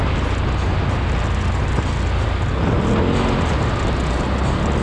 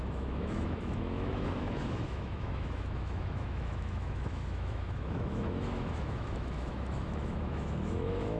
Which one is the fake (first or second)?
second